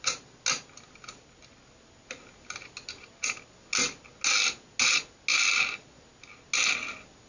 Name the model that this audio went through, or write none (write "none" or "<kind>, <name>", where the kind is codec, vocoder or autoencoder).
none